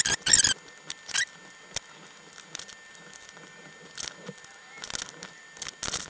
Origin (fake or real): real